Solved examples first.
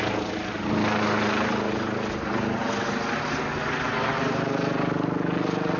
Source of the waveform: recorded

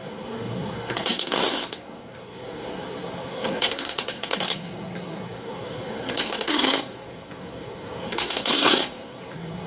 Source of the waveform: remade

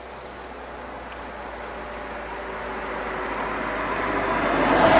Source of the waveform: recorded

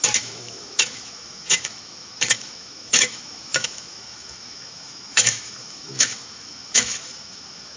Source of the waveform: remade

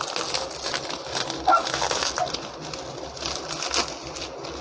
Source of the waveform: recorded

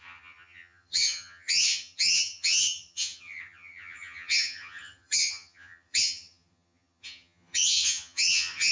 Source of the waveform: remade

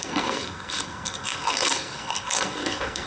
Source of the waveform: remade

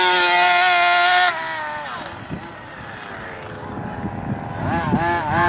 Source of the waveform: recorded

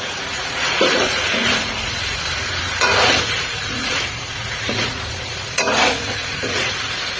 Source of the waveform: remade